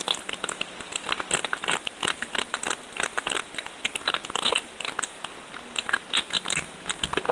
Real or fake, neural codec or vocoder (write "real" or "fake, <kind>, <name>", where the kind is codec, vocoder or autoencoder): real